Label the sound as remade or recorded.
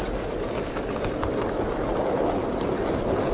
recorded